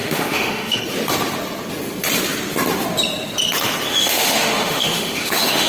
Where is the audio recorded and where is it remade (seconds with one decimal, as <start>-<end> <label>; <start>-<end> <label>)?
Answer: 0.0-0.8 remade; 0.8-3.9 recorded; 3.9-5.7 remade